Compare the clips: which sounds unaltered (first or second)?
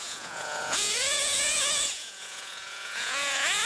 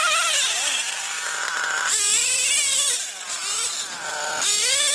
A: second